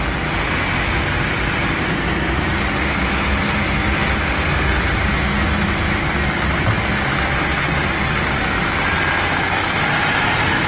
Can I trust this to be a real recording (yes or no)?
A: yes